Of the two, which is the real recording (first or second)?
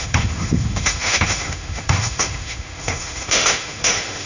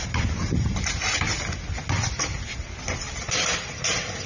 second